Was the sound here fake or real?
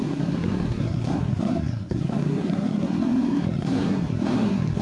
fake